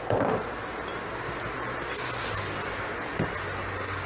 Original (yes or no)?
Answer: yes